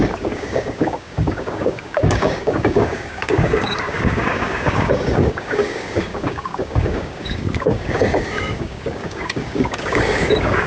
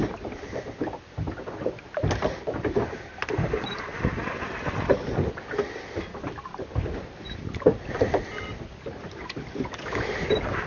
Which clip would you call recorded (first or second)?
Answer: second